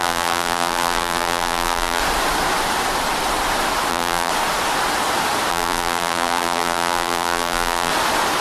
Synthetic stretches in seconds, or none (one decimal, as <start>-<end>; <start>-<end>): 0.0-2.0; 3.9-4.3; 5.5-7.9

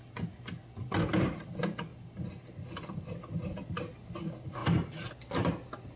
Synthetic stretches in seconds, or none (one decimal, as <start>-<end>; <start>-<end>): none